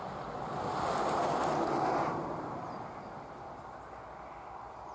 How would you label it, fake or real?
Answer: real